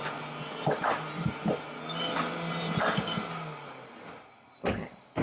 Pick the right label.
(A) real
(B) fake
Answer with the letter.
A